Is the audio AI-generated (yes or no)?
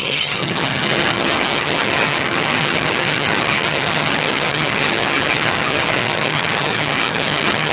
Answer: yes